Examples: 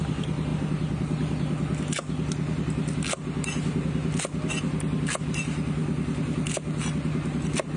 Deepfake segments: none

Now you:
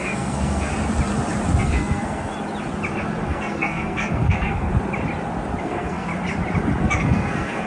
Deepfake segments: 0.0-0.7; 1.6-2.3; 3.2-4.7; 5.6-6.1; 6.8-7.7

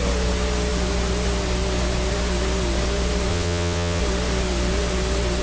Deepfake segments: 3.3-4.0

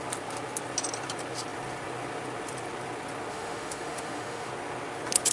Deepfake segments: 3.3-4.5

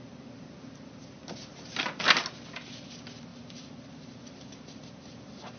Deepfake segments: 3.3-5.6

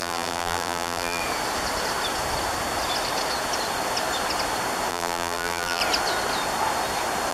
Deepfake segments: 0.0-1.2; 4.9-5.8

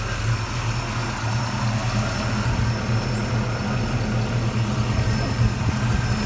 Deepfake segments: none

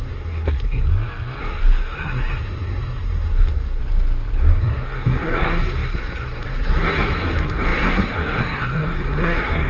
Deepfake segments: 0.0-0.9; 1.4-3.8; 4.6-9.7